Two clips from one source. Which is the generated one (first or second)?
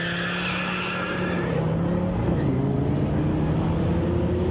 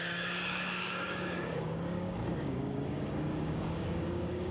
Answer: second